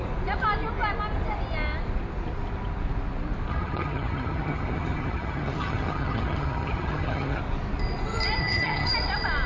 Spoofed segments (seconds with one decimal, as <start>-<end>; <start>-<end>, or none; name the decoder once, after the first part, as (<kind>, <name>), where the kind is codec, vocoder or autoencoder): 3.5-7.4 (vocoder, HiFi-GAN); 8.4-8.9